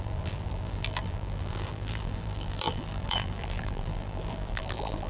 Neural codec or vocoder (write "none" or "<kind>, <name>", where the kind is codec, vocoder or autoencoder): vocoder, BigVGAN v2